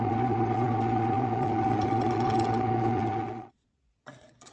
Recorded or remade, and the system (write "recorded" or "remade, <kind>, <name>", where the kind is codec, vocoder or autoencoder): remade, vocoder, Vocos